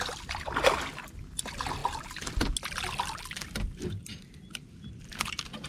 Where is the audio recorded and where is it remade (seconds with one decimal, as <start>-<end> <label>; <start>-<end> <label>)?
0.0-5.7 recorded